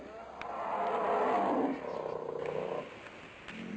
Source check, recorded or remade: recorded